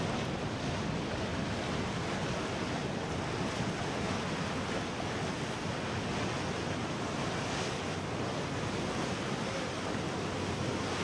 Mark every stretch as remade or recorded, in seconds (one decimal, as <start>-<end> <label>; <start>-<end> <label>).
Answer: 0.0-11.0 recorded